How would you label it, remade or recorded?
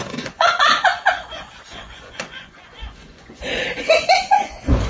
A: remade